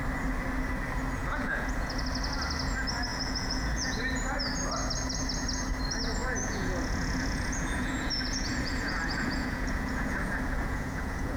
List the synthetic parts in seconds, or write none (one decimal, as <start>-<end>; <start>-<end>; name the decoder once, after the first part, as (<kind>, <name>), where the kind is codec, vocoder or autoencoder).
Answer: 1.2-2.0 (vocoder, Vocos); 3.1-4.0; 6.2-11.4